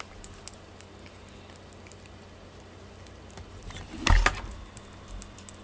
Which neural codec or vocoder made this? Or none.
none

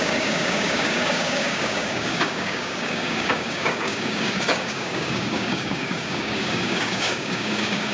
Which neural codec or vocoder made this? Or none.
codec, DAC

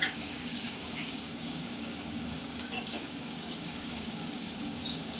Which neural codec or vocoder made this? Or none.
codec, DAC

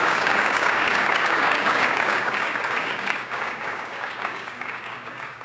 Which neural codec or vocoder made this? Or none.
codec, DAC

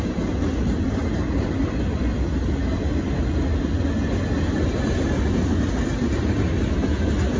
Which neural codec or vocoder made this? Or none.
none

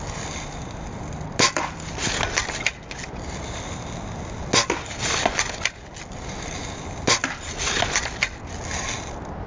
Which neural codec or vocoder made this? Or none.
none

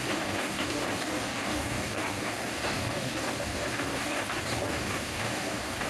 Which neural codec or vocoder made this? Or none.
codec, DAC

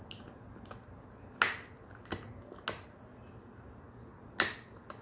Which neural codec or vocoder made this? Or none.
none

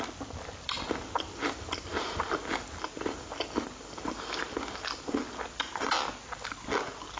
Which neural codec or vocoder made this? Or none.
none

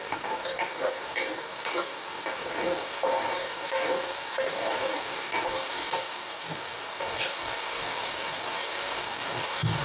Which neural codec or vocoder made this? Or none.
codec, DAC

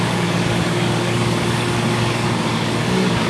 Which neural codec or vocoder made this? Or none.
codec, DAC